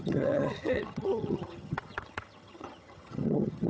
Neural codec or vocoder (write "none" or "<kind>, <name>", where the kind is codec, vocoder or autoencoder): vocoder, HiFi-GAN